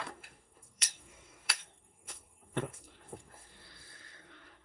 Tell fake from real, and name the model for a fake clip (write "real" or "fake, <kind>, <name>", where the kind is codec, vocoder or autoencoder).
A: fake, codec, SNAC